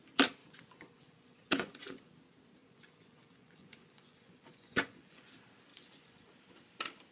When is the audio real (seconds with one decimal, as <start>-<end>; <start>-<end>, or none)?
0.0-0.4; 2.1-2.6; 5.3-5.7; 6.3-7.1